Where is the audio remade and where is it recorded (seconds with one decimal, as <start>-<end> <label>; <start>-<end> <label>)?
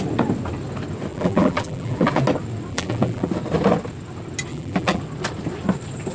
0.0-1.1 recorded; 1.1-2.2 remade; 2.2-2.7 recorded; 2.7-3.3 remade; 3.3-4.5 recorded; 4.5-5.0 remade; 5.0-6.1 recorded